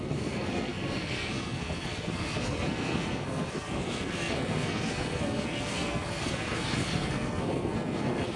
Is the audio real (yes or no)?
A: no